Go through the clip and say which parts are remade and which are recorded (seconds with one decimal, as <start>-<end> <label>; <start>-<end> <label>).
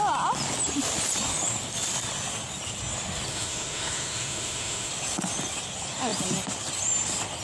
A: 0.0-3.3 recorded; 3.3-4.9 remade; 4.9-7.4 recorded